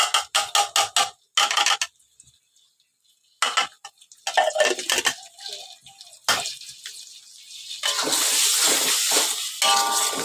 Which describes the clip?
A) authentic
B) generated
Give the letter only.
A